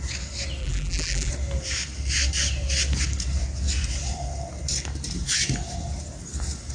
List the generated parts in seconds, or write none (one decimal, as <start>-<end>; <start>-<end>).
0.6-1.3

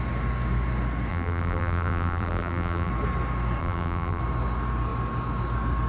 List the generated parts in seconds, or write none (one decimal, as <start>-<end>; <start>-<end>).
1.1-2.9; 3.6-4.2

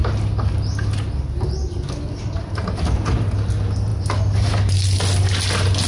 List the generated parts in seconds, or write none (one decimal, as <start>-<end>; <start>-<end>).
none

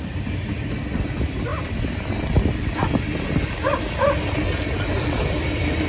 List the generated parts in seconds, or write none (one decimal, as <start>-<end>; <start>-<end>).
none

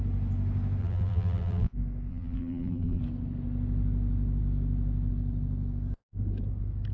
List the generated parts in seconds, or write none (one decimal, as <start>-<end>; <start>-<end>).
0.8-1.7; 2.1-3.0